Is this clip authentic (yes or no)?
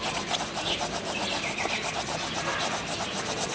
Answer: yes